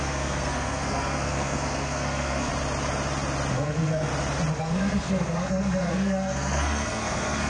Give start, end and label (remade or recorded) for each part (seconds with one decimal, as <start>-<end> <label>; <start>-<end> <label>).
0.0-2.5 remade; 2.5-3.5 recorded; 3.5-4.1 remade; 4.1-4.6 recorded; 4.6-7.5 remade